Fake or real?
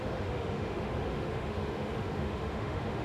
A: fake